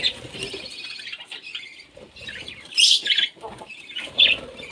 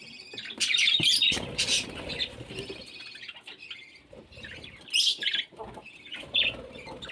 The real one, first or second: second